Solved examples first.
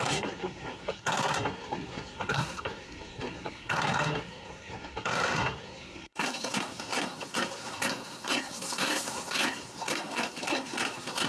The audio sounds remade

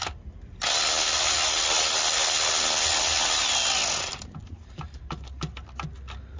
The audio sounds recorded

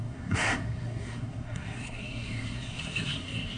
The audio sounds remade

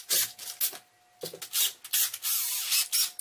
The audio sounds recorded